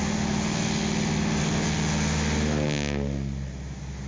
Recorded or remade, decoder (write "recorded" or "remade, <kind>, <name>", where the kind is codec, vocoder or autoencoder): recorded